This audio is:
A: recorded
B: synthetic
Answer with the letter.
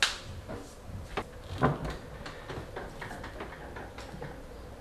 A